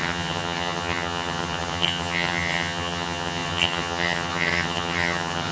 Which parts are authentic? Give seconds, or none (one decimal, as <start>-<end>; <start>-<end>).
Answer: none

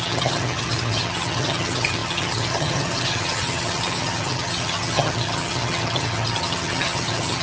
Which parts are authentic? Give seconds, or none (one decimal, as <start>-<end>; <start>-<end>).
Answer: none

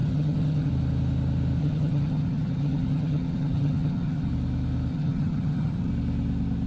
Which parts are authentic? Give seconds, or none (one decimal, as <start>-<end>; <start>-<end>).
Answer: 0.7-1.6; 4.3-4.9; 5.9-6.7